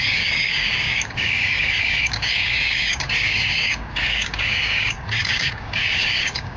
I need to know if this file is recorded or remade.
remade